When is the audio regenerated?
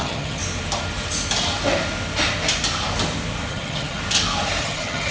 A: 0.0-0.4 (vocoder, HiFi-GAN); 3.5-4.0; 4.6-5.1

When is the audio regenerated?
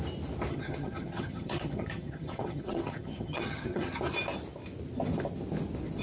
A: 0.5-4.0 (vocoder, HiFi-GAN)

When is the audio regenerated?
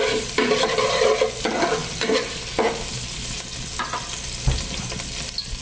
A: none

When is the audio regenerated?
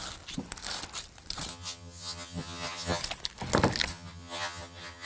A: 1.5-3.0 (vocoder, HiFi-GAN); 3.9-5.1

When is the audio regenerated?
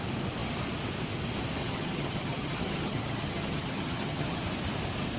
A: 1.6-4.4 (vocoder, HiFi-GAN)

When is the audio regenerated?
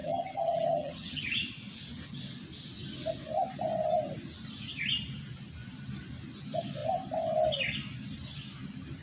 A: 0.0-1.2 (vocoder, HiFi-GAN)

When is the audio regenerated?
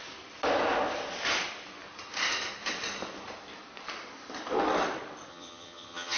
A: 5.3-6.2 (vocoder, HiFi-GAN)